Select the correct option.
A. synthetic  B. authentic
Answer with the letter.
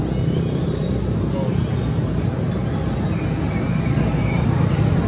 B